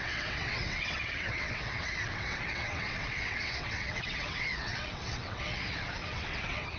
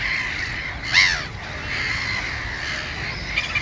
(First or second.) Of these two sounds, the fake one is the first